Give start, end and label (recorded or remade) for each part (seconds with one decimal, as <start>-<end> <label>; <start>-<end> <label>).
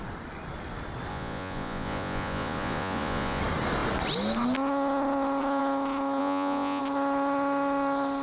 0.0-1.1 recorded; 1.1-3.4 remade; 3.4-6.2 recorded; 6.2-6.8 remade; 6.8-8.2 recorded